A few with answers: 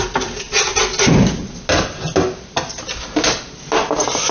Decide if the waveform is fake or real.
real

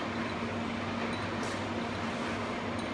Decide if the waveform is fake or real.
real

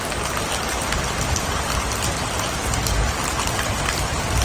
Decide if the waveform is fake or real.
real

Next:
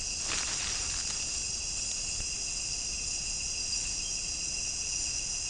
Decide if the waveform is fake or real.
real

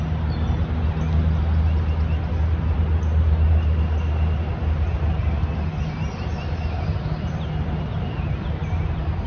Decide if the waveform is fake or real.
real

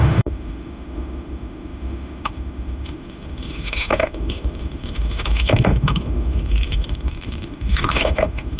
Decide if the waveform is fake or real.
fake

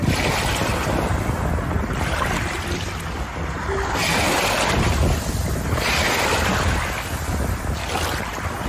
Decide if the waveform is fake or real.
real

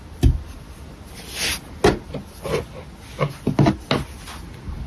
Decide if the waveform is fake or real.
real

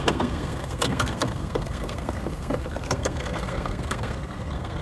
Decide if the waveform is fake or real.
fake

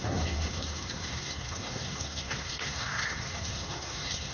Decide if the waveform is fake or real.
fake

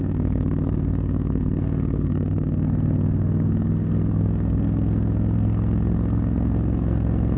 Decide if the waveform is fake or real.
fake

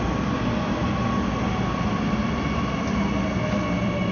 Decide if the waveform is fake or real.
real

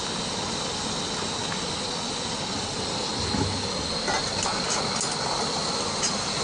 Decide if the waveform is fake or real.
real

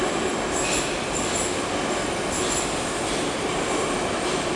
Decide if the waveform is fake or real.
real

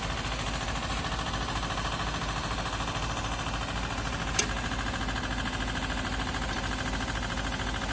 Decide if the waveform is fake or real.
real